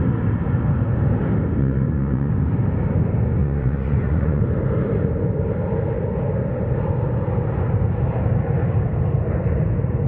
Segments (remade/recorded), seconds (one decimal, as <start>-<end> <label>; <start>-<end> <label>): 0.0-1.6 recorded; 1.6-2.3 remade; 2.3-3.4 recorded; 3.4-4.4 remade; 4.4-10.1 recorded